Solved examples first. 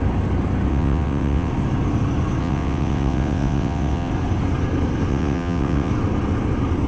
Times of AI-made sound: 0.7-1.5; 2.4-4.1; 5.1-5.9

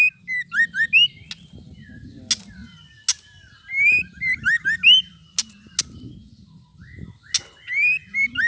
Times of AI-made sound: none

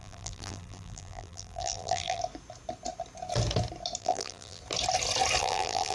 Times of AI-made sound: 0.0-2.2; 4.0-4.6; 5.4-5.9

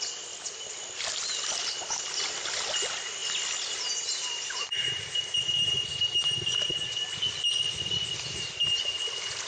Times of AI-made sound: none

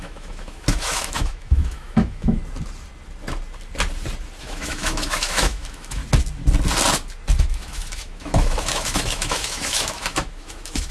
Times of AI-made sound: 0.0-2.4; 4.4-6.0; 7.4-10.9

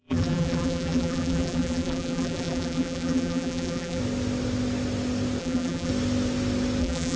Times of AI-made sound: 0.0-4.0; 5.4-5.9; 6.8-7.2